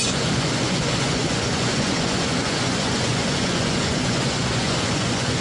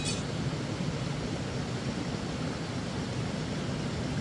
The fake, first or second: first